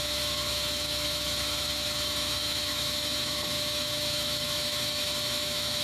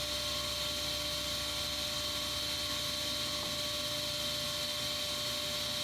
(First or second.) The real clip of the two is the second